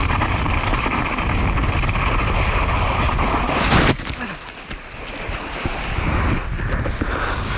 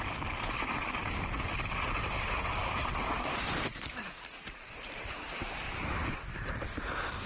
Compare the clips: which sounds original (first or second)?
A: first